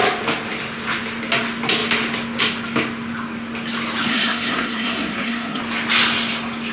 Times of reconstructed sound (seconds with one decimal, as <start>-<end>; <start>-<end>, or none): 4.1-5.6

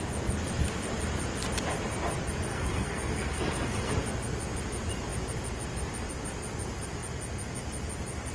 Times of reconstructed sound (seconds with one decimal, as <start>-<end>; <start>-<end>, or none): 2.5-3.9